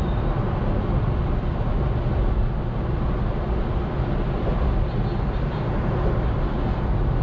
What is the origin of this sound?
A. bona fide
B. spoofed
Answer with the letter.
A